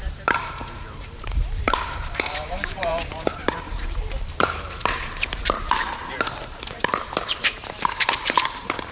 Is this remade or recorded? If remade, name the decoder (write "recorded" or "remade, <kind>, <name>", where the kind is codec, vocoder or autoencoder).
remade, vocoder, BigVGAN v2